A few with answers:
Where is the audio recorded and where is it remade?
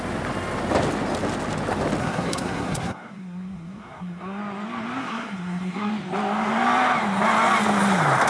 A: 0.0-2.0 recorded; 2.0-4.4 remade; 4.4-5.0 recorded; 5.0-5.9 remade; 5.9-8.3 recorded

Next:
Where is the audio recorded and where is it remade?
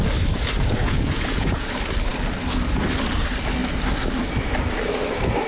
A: 0.0-0.8 recorded; 0.8-1.7 remade; 1.7-5.5 recorded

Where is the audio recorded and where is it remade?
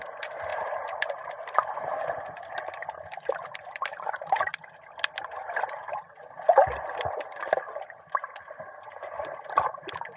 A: 0.0-10.2 recorded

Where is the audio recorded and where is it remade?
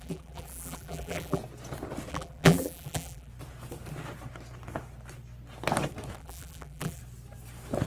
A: 0.0-1.4 remade; 1.4-2.1 recorded; 2.1-3.3 remade; 3.3-6.2 recorded; 6.2-7.0 remade; 7.0-7.9 recorded